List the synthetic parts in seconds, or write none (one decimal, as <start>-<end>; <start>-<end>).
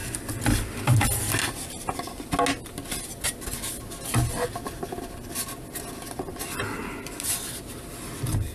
none